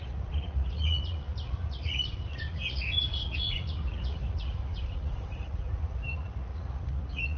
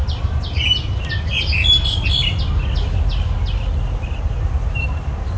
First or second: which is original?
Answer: second